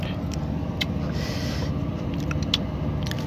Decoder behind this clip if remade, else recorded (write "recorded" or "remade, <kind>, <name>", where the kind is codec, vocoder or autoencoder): recorded